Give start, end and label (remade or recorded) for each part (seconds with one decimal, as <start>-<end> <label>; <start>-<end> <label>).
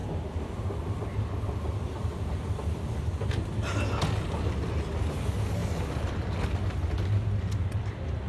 0.0-0.5 remade; 0.5-2.0 recorded; 2.0-3.2 remade; 3.2-5.6 recorded; 5.6-6.9 remade; 6.9-8.3 recorded